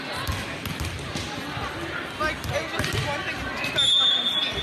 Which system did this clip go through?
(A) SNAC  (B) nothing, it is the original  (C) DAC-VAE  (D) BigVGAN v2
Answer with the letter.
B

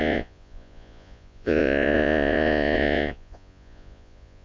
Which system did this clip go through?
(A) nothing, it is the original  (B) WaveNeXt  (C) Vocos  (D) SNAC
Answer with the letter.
C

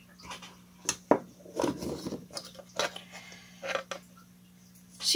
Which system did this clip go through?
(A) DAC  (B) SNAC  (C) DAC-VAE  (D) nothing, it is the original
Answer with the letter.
D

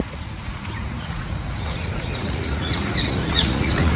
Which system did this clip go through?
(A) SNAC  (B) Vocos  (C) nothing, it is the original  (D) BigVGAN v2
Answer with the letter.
B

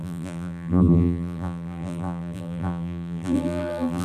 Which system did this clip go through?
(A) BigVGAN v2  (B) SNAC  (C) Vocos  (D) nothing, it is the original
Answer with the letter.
A